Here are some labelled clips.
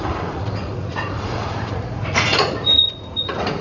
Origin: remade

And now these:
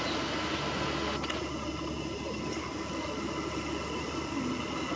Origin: recorded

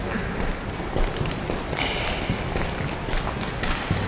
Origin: recorded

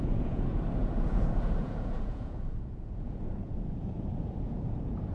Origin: remade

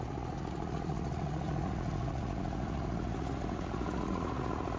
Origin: remade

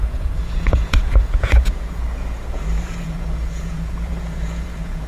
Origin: remade